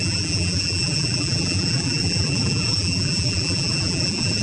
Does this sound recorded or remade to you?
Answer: remade